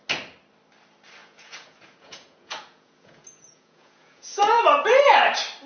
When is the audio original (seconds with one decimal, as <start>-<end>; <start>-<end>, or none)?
0.0-1.2; 4.6-5.7

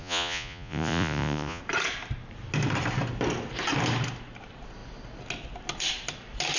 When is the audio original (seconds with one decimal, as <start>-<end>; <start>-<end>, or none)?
1.6-6.6